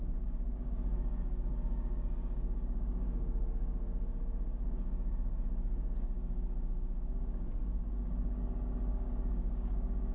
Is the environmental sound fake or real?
fake